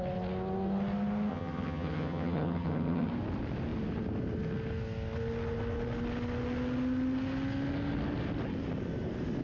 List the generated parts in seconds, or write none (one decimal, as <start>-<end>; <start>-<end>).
1.3-3.1